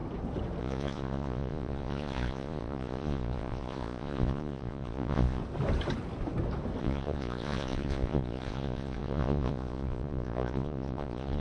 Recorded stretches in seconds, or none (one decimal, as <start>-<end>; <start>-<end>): 0.0-0.6; 5.4-6.8